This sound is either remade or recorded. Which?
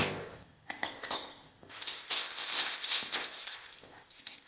remade